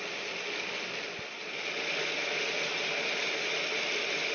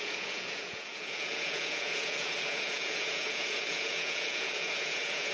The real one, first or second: first